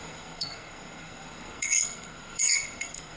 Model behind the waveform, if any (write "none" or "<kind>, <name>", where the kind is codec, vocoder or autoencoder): codec, SNAC